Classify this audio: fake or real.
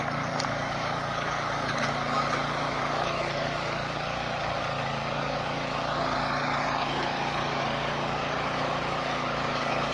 fake